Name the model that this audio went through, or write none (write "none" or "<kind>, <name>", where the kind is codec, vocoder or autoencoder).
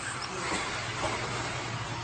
none